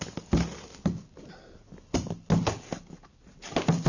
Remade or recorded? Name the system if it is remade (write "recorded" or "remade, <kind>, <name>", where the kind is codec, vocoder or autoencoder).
recorded